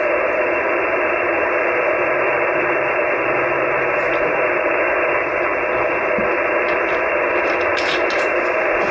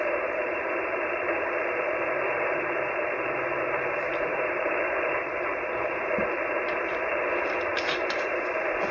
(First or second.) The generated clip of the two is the second